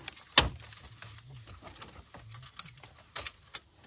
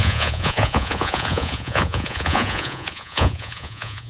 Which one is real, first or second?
first